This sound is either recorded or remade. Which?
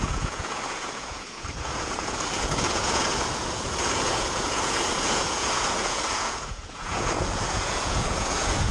remade